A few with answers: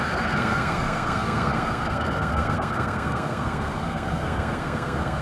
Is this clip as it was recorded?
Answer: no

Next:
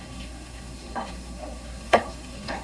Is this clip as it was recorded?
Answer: no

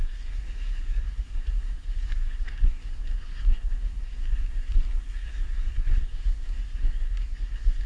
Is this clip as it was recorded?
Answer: no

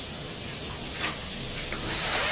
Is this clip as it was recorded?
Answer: yes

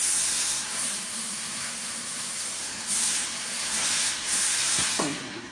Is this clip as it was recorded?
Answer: no